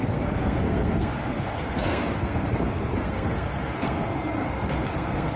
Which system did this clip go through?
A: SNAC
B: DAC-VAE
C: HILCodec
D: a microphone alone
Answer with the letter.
A